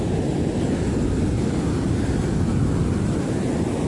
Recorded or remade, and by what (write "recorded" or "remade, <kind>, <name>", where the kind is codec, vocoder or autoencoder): recorded